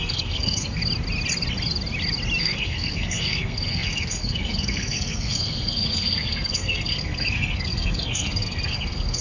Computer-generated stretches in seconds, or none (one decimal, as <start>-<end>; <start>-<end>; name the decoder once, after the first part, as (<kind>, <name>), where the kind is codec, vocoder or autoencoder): 0.0-0.8 (codec, SNAC); 2.4-9.2